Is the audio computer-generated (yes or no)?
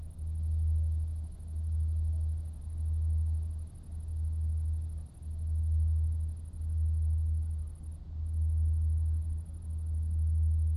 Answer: no